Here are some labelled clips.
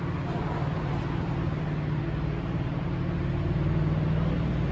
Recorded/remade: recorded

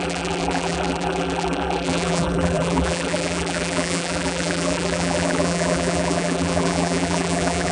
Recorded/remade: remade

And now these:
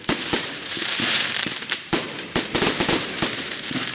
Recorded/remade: remade